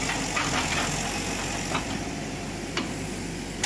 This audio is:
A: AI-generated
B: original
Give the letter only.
B